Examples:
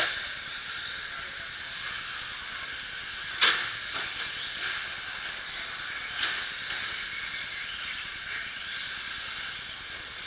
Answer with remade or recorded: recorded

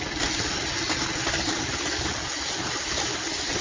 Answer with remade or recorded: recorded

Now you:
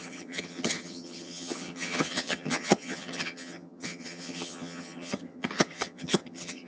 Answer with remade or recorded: remade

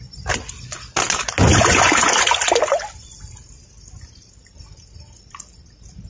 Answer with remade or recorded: recorded